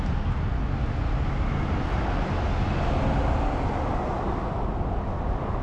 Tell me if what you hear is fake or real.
real